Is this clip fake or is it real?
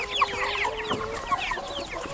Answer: real